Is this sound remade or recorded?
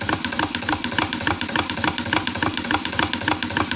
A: recorded